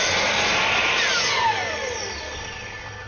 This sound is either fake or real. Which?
real